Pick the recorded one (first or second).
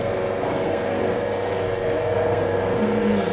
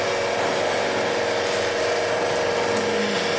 second